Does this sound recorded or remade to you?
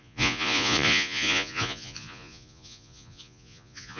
remade